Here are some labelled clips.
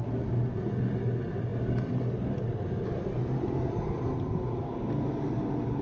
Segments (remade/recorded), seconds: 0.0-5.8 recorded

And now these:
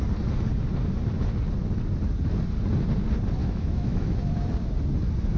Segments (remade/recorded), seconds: 0.0-3.4 recorded; 3.4-4.1 remade; 4.1-5.4 recorded

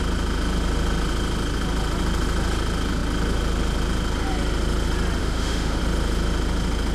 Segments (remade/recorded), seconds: 0.0-5.2 recorded; 5.2-5.8 remade; 5.8-6.9 recorded

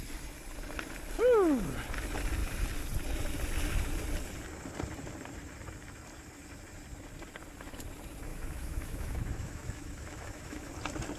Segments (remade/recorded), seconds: 0.0-8.3 recorded; 8.3-10.7 remade; 10.7-11.2 recorded

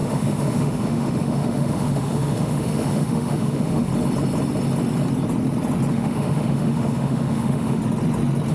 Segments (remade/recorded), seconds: 0.0-3.9 remade; 3.9-5.9 recorded; 5.9-7.8 remade; 7.8-8.5 recorded